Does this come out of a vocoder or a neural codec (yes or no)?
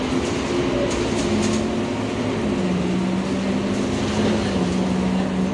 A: no